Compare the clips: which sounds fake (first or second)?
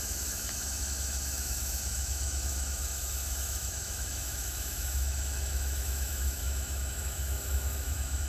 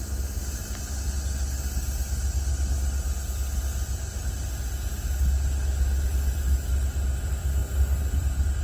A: first